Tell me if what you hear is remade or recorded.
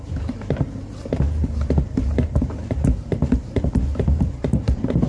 remade